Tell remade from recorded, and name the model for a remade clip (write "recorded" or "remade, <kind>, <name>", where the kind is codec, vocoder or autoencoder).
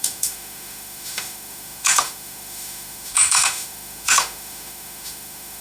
remade, autoencoder, DAC-VAE